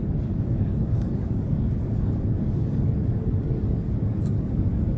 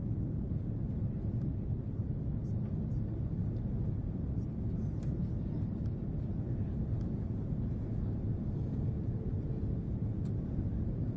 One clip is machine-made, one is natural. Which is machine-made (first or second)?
first